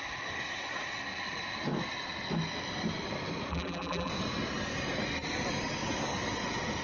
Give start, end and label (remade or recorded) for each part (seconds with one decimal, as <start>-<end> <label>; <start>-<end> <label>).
0.0-3.5 recorded; 3.5-4.1 remade; 4.1-6.8 recorded